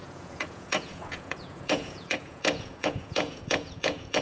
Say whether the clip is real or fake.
fake